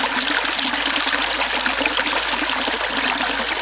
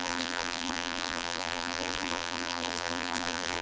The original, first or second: first